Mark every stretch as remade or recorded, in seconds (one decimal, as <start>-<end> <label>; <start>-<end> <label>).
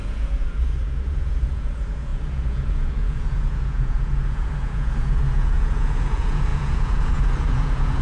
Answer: 0.0-8.0 remade